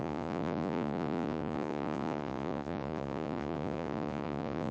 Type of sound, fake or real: fake